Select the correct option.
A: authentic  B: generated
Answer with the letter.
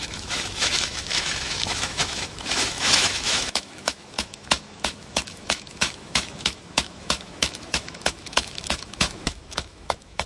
B